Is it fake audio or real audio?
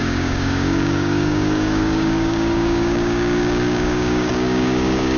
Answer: fake